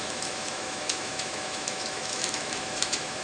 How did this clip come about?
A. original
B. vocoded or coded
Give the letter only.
B